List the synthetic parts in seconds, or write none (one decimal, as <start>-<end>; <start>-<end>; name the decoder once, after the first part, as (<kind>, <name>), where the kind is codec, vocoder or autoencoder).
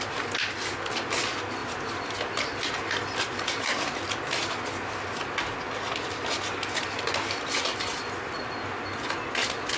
none